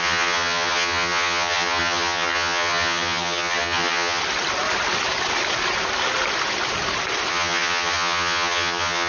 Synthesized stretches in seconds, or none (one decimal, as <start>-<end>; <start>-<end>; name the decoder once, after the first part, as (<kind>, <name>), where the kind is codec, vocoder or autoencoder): 0.0-4.2 (vocoder, HiFi-GAN); 7.3-9.1